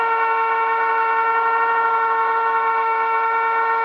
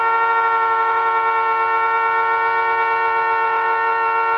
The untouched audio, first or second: second